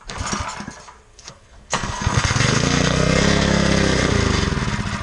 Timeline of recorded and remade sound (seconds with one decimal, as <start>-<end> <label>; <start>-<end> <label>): 0.0-1.1 recorded; 1.1-4.1 remade; 4.1-5.0 recorded